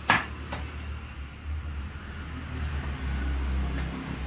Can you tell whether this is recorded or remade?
recorded